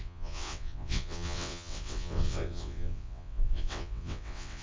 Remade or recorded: remade